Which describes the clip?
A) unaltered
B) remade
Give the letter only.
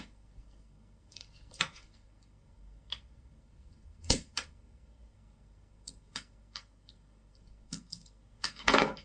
B